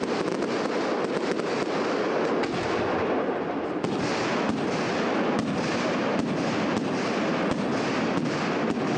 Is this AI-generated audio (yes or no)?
no